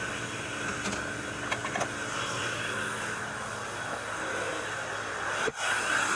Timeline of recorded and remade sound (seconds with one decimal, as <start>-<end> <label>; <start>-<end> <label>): 0.0-6.2 recorded